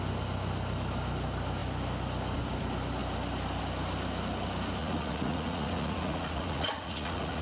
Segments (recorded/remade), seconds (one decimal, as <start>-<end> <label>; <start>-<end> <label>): 0.0-4.8 recorded; 4.8-7.4 remade